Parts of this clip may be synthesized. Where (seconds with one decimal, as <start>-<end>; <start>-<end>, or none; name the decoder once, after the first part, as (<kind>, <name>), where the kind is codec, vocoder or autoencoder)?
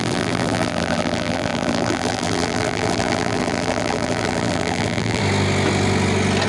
0.0-5.2 (vocoder, BigVGAN v2)